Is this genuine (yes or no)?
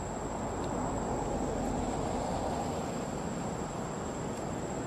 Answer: yes